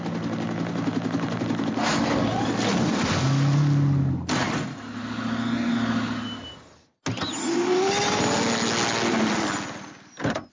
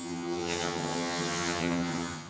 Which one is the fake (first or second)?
second